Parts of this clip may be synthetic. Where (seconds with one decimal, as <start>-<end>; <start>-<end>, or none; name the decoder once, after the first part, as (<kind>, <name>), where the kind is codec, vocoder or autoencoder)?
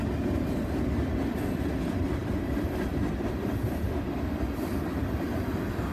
none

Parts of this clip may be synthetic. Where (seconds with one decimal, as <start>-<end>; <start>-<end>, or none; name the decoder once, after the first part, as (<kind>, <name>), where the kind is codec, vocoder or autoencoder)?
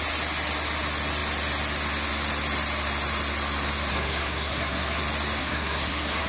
3.9-5.0 (codec, SNAC); 5.4-6.3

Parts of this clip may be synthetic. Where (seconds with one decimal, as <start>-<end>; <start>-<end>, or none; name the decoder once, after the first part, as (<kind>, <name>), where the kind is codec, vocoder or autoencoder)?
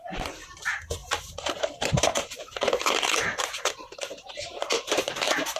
0.0-5.6 (vocoder, BigVGAN v2)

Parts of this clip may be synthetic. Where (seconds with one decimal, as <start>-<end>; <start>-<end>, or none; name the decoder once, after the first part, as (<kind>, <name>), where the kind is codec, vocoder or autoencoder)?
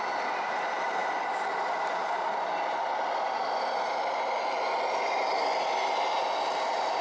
none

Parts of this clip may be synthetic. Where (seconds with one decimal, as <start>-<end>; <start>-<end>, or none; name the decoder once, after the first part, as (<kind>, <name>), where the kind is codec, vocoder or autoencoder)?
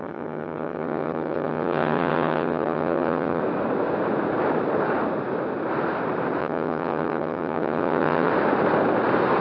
0.0-3.4 (vocoder, HiFi-GAN); 6.4-8.3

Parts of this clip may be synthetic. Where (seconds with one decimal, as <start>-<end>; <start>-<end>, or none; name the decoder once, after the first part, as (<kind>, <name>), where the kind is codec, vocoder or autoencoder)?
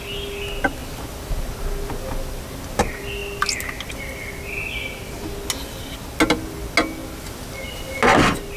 none